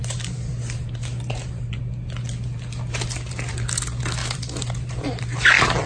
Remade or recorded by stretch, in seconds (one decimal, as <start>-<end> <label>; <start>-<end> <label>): 0.0-1.8 remade; 1.8-4.2 recorded; 4.2-5.2 remade; 5.2-5.9 recorded